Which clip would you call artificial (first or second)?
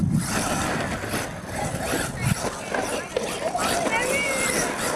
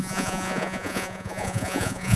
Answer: second